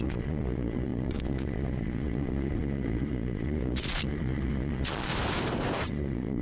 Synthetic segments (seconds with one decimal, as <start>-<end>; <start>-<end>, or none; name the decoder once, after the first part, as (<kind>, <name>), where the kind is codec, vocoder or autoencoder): 0.0-5.1 (vocoder, Vocos); 5.9-6.4